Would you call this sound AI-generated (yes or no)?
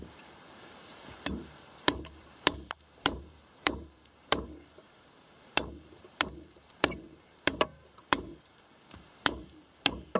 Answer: yes